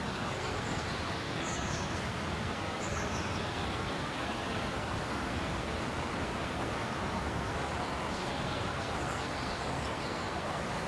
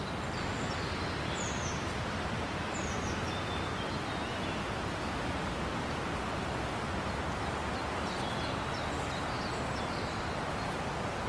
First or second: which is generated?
first